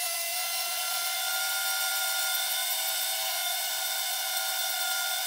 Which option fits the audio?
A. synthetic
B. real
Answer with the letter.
B